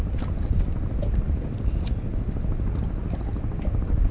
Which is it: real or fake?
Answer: real